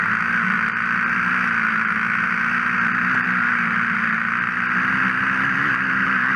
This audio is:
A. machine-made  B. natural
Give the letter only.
B